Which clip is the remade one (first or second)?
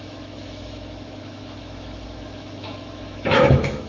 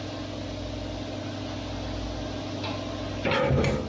first